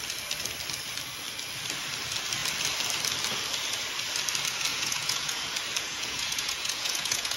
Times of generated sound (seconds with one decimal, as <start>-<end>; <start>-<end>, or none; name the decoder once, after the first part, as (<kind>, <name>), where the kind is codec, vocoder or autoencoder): 4.7-5.4 (vocoder, Vocos); 5.9-7.4